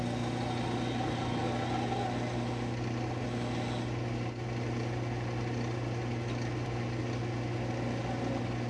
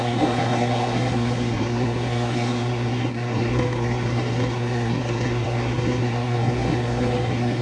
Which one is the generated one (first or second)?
second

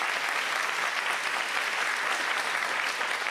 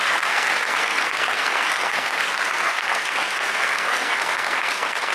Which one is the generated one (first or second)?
second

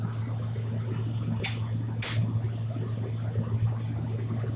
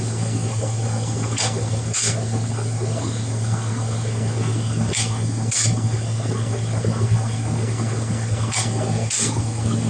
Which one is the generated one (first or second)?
second